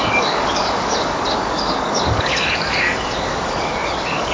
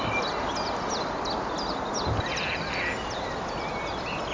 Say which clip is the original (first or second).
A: second